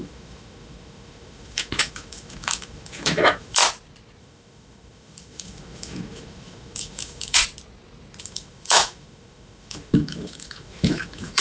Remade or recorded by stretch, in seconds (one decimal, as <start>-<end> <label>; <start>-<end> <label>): 0.0-3.6 remade; 3.6-4.2 recorded; 4.2-7.4 remade; 7.4-8.2 recorded; 8.2-11.4 remade